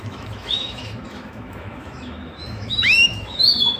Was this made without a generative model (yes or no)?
no